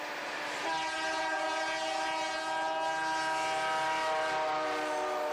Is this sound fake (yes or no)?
no